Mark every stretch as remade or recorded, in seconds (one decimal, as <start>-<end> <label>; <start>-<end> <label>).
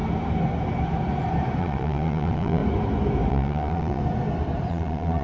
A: 0.0-1.6 recorded; 1.6-2.6 remade; 2.6-3.3 recorded; 3.3-4.0 remade; 4.0-4.7 recorded; 4.7-5.2 remade